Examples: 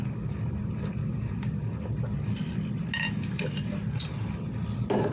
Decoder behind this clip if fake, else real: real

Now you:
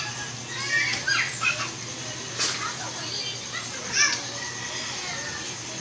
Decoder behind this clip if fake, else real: real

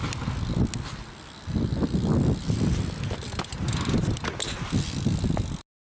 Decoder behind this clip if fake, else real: real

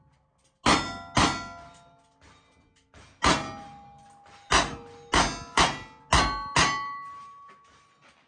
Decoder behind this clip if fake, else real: real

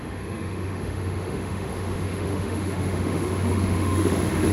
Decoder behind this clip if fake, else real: fake, autoencoder, DAC-VAE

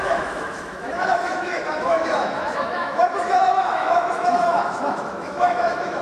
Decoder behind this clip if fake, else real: fake, autoencoder, DAC-VAE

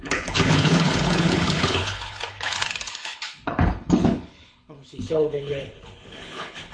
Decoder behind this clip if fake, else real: fake, codec, HILCodec